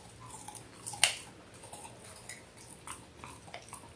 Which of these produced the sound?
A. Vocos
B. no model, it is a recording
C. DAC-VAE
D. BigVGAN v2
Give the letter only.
B